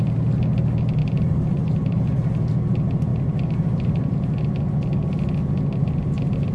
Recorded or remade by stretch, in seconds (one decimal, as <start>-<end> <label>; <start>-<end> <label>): 0.0-1.0 recorded; 1.0-2.2 remade; 2.2-3.1 recorded; 3.1-4.1 remade; 4.1-6.5 recorded